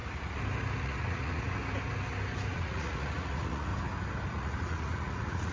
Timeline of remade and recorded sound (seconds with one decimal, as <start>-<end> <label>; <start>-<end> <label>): 0.0-0.8 recorded; 0.8-1.6 remade; 1.6-2.5 recorded; 2.5-3.7 remade; 3.7-4.3 recorded; 4.3-5.5 remade